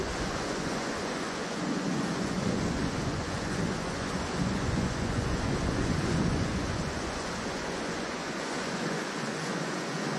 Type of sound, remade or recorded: remade